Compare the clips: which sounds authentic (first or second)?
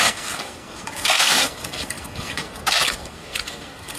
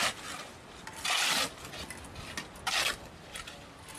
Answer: second